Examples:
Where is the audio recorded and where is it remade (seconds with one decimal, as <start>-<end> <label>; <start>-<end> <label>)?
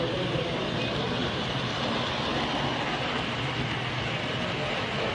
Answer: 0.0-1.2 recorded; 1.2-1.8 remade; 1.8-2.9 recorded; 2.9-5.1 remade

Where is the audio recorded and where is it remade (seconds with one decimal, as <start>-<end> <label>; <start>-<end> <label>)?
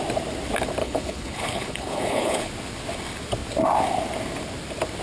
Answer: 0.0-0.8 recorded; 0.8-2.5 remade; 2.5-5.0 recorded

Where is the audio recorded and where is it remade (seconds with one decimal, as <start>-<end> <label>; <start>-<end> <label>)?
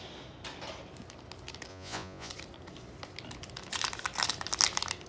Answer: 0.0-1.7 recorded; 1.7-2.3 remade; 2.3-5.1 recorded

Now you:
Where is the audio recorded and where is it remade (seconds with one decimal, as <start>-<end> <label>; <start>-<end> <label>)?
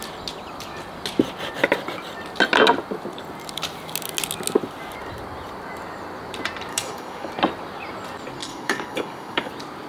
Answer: 0.0-6.7 recorded; 6.7-7.3 remade; 7.3-8.4 recorded; 8.4-9.5 remade; 9.5-9.9 recorded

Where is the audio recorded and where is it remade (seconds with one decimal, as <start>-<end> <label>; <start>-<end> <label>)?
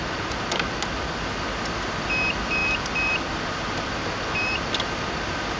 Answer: 0.0-5.6 recorded